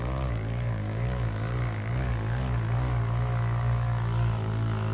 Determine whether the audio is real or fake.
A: fake